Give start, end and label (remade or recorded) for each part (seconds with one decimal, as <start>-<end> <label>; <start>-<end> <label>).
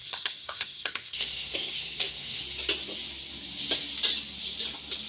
0.0-2.4 remade; 2.4-5.1 recorded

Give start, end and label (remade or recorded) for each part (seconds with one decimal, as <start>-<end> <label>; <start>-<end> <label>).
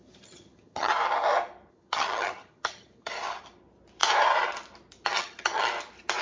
0.0-0.9 remade; 0.9-1.7 recorded; 1.7-3.1 remade; 3.1-5.1 recorded; 5.1-5.7 remade; 5.7-6.2 recorded